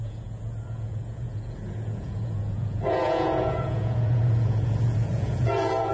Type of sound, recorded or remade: remade